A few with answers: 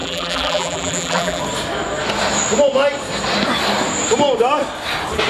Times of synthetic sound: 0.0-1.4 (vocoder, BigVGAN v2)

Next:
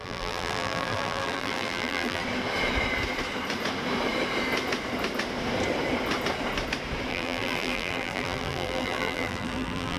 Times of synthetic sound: 0.0-2.2 (vocoder, BigVGAN v2); 7.1-10.0

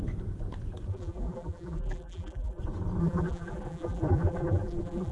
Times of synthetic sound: 0.9-2.6 (vocoder, BigVGAN v2); 3.0-5.1

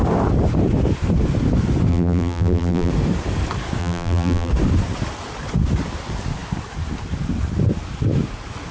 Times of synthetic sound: 1.9-2.9 (vocoder, BigVGAN v2); 3.8-4.5

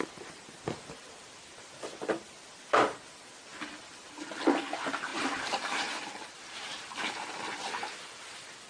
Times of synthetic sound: 5.1-7.1 (vocoder, BigVGAN v2)